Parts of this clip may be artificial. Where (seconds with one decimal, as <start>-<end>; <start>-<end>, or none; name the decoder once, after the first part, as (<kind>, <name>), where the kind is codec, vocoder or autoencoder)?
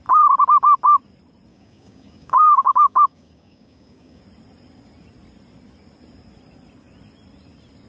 1.5-4.2 (codec, DAC)